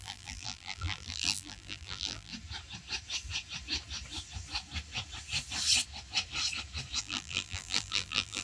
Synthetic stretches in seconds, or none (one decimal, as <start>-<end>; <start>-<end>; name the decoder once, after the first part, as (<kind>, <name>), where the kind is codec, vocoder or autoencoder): 0.0-2.3 (vocoder, BigVGAN v2); 7.0-8.4